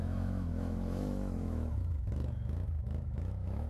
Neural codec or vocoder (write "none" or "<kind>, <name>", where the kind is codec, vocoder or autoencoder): autoencoder, DAC-VAE